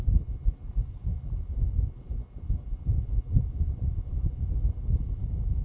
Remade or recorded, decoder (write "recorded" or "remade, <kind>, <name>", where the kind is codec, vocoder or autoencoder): recorded